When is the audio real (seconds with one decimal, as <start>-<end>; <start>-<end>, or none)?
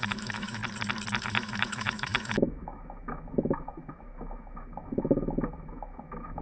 0.6-1.2